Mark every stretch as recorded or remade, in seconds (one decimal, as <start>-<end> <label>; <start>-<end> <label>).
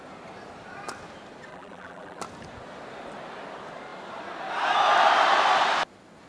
0.0-1.5 recorded; 1.5-2.2 remade; 2.2-6.3 recorded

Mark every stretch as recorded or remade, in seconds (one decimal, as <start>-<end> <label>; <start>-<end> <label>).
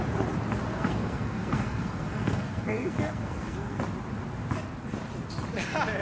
0.0-0.7 recorded; 0.7-3.8 remade; 3.8-6.0 recorded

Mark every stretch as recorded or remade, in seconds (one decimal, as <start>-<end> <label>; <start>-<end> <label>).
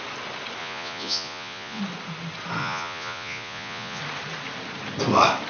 0.0-0.6 recorded; 0.6-1.8 remade; 1.8-2.6 recorded; 2.6-4.0 remade; 4.0-5.5 recorded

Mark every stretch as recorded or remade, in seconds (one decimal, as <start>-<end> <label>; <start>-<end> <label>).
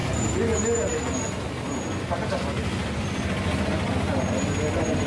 0.0-5.1 recorded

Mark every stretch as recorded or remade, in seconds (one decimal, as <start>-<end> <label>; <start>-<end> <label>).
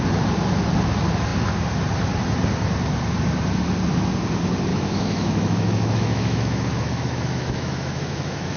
0.0-4.7 recorded; 4.7-8.6 remade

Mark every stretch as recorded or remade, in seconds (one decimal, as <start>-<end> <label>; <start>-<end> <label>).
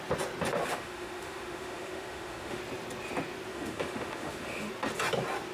0.0-0.7 recorded; 0.7-2.6 remade; 2.6-3.5 recorded; 3.5-4.7 remade; 4.7-5.5 recorded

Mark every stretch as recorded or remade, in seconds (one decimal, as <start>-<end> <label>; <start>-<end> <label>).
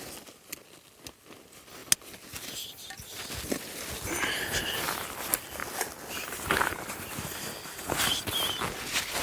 0.0-9.2 recorded